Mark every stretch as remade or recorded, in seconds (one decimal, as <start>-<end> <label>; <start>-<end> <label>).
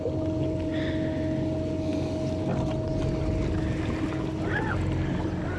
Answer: 0.0-5.6 recorded